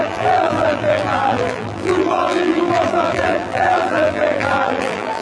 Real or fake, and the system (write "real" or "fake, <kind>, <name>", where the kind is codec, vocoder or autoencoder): fake, vocoder, BigVGAN v2